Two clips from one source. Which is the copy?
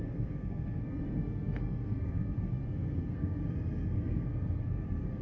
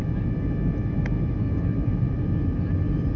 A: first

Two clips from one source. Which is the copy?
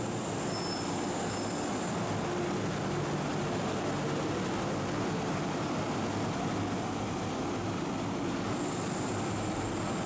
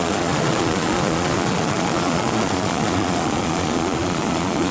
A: second